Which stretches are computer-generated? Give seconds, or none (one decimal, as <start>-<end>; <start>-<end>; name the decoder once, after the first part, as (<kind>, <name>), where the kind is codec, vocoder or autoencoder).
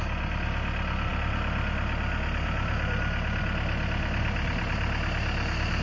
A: none